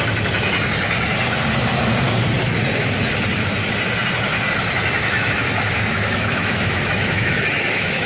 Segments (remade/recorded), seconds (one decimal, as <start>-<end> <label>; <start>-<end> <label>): 0.0-5.0 recorded; 5.0-8.1 remade